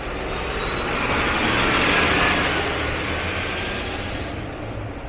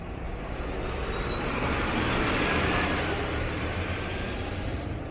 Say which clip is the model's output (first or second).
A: second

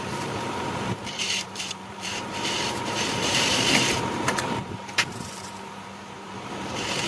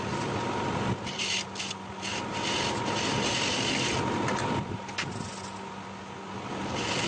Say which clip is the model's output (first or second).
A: first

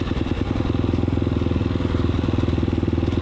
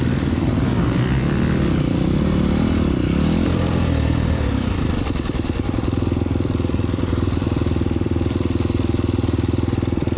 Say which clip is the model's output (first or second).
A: second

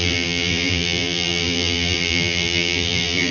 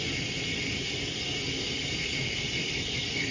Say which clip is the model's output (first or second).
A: first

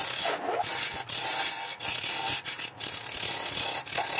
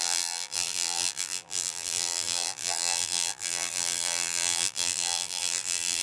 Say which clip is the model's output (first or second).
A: second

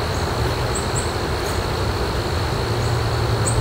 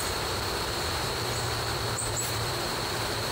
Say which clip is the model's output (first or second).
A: second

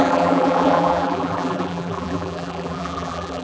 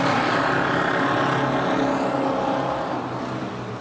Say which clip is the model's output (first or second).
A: first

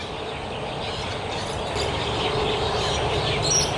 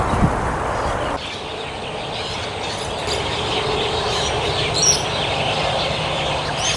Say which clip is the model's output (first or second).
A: second